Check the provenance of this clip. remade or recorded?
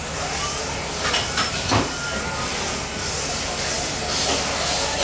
recorded